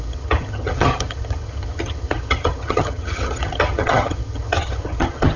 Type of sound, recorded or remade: remade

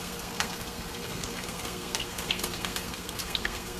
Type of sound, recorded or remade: remade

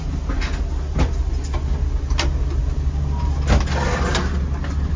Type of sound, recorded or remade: recorded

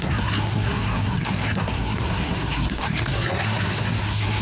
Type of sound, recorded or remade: remade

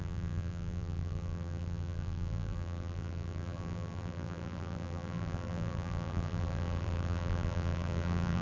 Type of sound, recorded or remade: remade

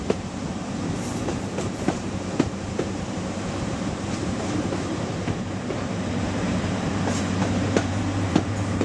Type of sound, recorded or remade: remade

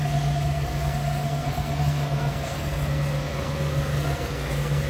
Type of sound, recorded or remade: remade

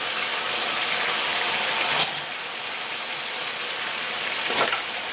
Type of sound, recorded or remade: recorded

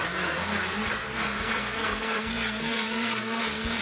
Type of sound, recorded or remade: remade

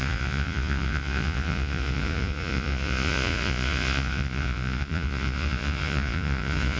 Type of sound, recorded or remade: remade